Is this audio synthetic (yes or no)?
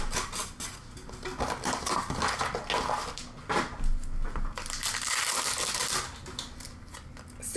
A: no